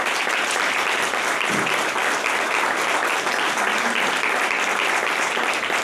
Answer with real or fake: real